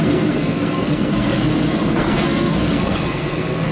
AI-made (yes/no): yes